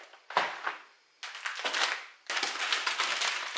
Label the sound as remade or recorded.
recorded